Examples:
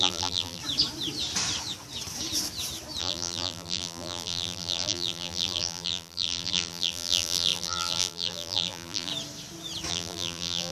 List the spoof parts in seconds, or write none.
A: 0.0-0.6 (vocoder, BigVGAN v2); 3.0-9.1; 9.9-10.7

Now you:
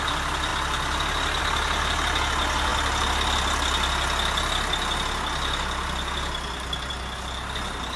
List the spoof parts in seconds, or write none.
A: none

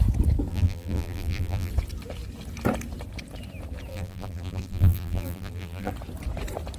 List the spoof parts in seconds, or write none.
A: 0.5-1.7 (vocoder, BigVGAN v2); 3.9-5.9

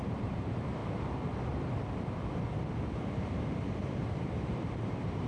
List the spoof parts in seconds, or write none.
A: 0.0-0.8 (vocoder, BigVGAN v2); 3.8-5.3